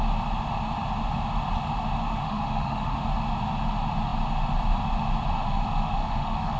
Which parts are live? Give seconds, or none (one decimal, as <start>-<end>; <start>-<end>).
0.0-2.1; 3.0-5.4